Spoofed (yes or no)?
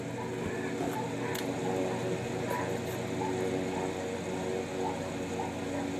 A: no